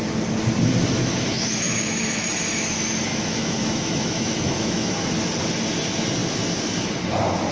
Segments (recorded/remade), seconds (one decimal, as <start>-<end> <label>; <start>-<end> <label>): 0.0-1.0 recorded; 1.0-2.3 remade; 2.3-3.1 recorded; 3.1-5.1 remade; 5.1-7.5 recorded